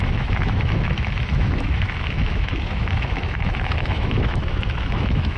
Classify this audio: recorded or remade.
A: remade